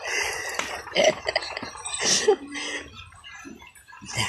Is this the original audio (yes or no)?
yes